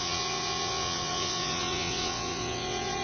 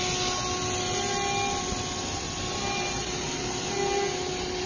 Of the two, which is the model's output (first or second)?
first